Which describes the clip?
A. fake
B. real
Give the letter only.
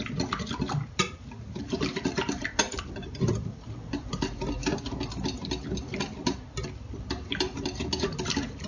A